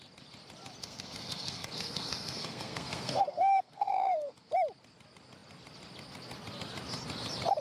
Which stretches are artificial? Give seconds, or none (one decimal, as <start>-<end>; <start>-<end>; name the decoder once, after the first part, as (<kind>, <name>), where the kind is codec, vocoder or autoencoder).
0.8-4.5 (codec, SNAC)